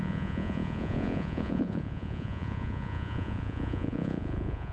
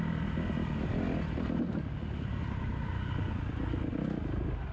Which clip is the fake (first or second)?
first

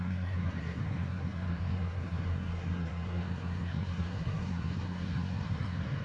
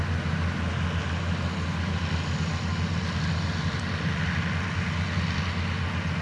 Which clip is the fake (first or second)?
first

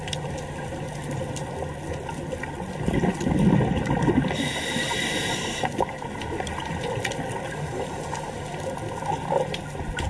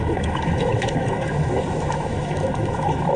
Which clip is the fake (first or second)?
second